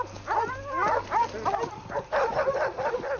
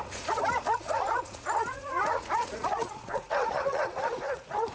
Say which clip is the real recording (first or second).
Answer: first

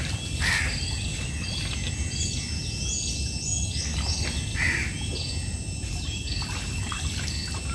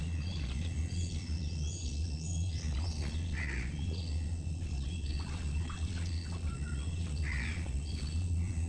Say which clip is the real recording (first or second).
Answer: first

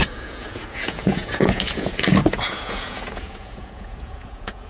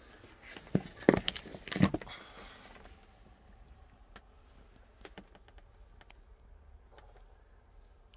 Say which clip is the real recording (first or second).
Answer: second